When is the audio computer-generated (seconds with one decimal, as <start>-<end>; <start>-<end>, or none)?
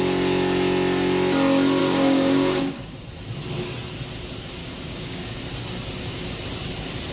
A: 1.8-3.0; 4.6-5.4